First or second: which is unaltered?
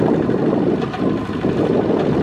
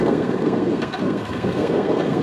first